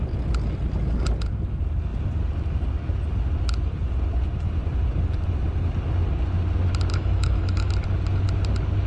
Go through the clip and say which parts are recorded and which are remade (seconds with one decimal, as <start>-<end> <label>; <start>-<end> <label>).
0.0-6.9 recorded; 6.9-7.7 remade; 7.7-8.9 recorded

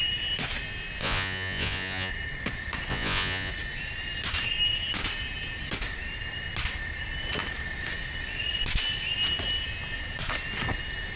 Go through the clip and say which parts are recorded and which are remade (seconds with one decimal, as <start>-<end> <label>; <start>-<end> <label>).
0.0-1.0 recorded; 1.0-2.1 remade; 2.1-2.9 recorded; 2.9-3.5 remade; 3.5-11.2 recorded

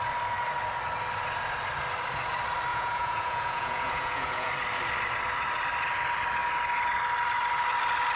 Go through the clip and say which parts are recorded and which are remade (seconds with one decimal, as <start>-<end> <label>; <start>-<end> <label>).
0.0-2.7 recorded; 2.7-4.5 remade; 4.5-8.2 recorded

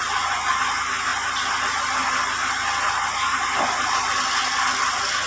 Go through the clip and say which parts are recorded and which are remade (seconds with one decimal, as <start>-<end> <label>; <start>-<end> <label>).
0.0-5.3 recorded

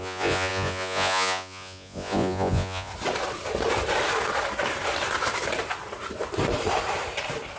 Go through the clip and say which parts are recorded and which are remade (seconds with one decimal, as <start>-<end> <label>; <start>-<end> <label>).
0.0-2.9 remade; 2.9-7.6 recorded

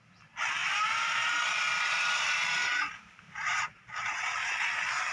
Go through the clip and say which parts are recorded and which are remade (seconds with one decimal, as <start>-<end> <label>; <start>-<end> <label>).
0.0-0.6 recorded; 0.6-1.4 remade; 1.4-2.6 recorded; 2.6-4.5 remade; 4.5-5.1 recorded